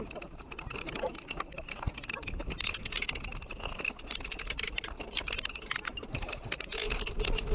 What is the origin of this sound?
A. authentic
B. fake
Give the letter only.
A